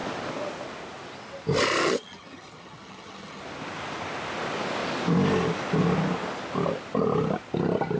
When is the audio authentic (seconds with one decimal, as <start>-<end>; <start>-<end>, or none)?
0.0-1.8; 3.4-8.0